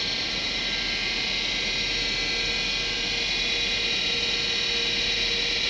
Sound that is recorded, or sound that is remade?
recorded